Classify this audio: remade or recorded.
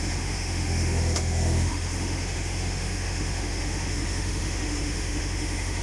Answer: remade